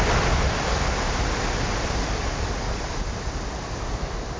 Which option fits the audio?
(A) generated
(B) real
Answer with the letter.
B